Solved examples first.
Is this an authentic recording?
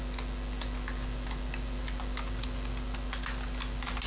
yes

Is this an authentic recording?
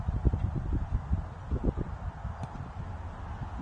yes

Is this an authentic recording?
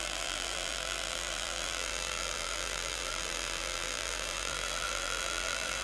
no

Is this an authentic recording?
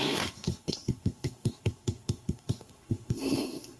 no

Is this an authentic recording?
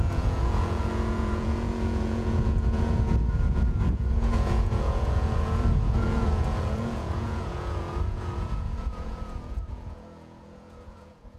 no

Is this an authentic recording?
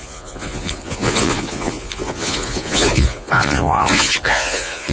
no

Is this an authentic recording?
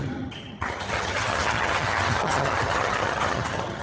no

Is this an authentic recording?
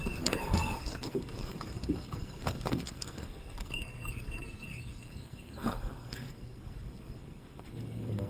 no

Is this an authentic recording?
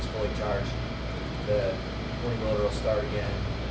yes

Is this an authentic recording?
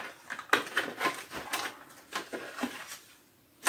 yes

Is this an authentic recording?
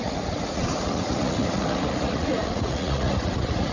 no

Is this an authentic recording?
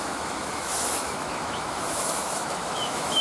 no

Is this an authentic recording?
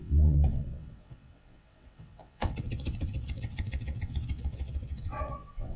no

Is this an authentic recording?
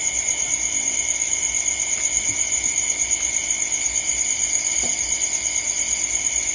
yes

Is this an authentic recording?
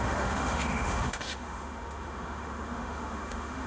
no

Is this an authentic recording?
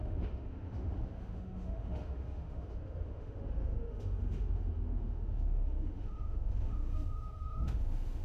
no